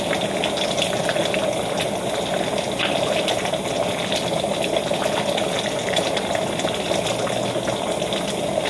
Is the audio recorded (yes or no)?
yes